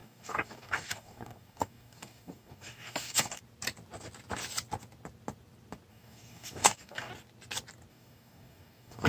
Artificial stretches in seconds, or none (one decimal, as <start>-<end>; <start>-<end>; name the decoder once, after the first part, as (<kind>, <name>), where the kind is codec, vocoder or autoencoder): 0.0-3.4 (codec, DAC); 5.9-7.1; 7.9-9.1